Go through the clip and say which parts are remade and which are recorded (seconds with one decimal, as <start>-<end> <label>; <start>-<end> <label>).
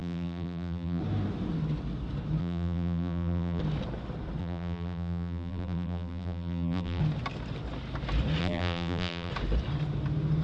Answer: 0.0-1.0 remade; 1.0-2.4 recorded; 2.4-3.6 remade; 3.6-4.4 recorded; 4.4-7.0 remade; 7.0-8.4 recorded; 8.4-9.3 remade; 9.3-10.4 recorded